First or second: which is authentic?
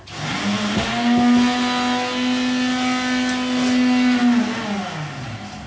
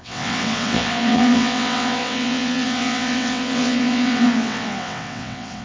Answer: first